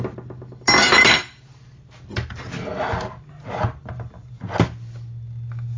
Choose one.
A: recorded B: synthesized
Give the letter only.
A